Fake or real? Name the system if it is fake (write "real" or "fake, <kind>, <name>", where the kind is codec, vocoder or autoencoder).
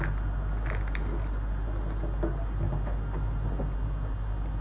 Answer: real